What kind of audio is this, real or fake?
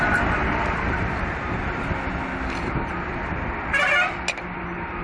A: real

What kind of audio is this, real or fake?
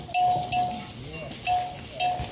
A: real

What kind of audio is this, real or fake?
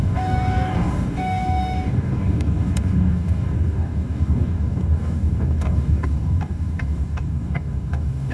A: fake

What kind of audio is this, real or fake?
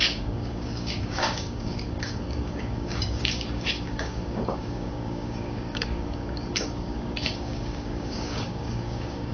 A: fake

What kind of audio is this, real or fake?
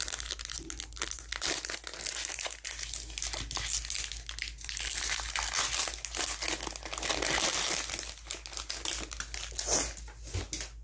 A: real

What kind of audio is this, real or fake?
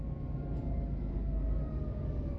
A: fake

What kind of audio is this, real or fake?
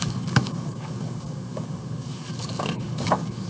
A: fake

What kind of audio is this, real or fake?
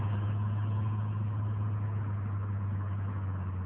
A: real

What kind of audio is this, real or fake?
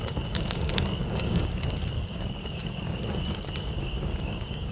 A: fake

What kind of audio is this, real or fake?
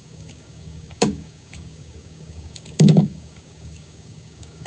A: fake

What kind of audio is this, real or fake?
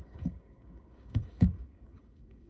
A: fake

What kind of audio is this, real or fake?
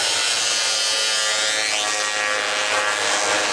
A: real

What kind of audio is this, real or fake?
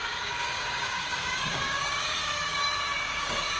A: fake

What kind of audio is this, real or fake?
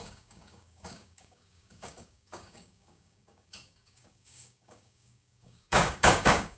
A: fake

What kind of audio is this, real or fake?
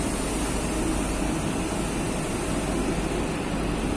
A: real